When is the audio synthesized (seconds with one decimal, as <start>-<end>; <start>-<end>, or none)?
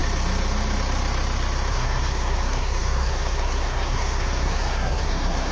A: 1.7-5.5